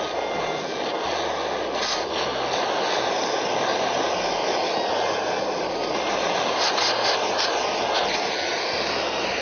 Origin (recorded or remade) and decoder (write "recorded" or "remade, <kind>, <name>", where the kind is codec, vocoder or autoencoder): recorded